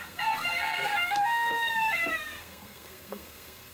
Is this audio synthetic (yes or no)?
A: yes